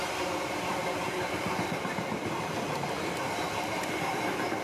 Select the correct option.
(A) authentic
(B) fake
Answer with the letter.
A